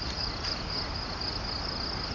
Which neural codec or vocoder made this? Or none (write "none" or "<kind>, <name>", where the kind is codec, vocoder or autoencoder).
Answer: none